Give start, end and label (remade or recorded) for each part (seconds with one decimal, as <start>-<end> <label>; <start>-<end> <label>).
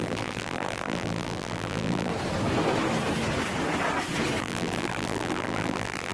0.0-2.1 remade; 2.1-4.4 recorded; 4.4-6.1 remade